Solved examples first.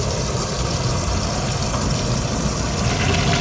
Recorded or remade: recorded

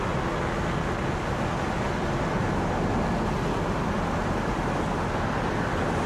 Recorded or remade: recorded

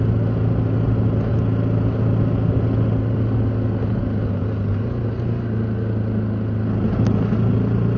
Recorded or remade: recorded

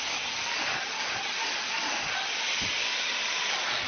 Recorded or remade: recorded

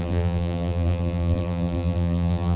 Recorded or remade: remade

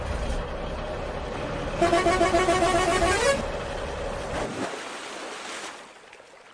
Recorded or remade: recorded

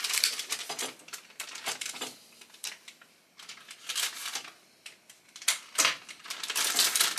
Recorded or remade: remade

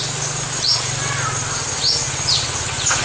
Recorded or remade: recorded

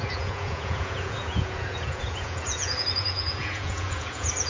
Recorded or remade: remade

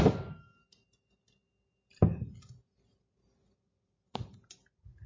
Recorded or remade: recorded